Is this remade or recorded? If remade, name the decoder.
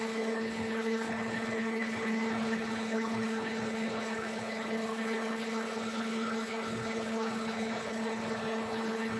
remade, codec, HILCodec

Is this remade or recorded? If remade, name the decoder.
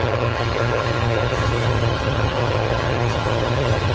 remade, vocoder, HiFi-GAN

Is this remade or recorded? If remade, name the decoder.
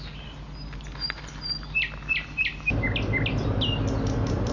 recorded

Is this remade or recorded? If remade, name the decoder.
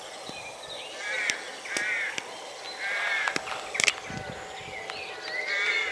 recorded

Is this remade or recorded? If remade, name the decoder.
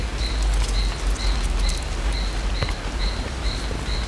recorded